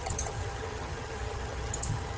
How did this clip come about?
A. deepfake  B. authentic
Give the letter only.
A